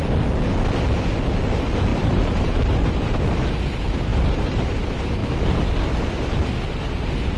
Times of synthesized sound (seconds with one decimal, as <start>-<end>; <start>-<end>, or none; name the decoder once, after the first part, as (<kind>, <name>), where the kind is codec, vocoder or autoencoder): 1.9-2.9 (vocoder, BigVGAN v2); 4.1-4.6